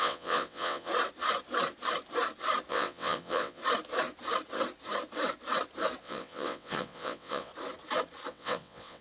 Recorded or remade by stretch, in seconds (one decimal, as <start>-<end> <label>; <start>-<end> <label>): 0.0-0.9 remade; 0.9-2.7 recorded; 2.7-3.6 remade; 3.6-6.0 recorded; 6.0-7.5 remade; 7.5-8.3 recorded; 8.3-9.0 remade